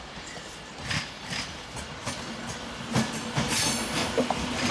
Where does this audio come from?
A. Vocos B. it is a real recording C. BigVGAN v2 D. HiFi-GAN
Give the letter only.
B